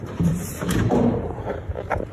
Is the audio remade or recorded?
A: remade